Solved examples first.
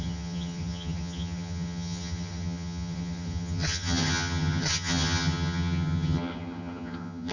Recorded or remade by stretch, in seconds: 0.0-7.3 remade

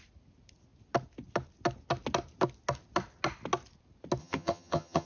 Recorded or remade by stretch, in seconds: 0.0-4.2 recorded; 4.2-5.1 remade

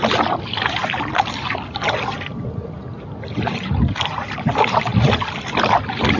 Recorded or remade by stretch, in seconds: 0.0-6.2 recorded

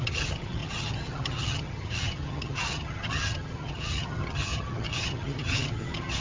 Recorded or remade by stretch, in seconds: 0.0-6.2 remade